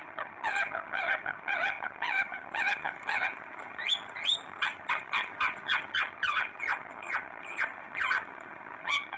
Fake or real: fake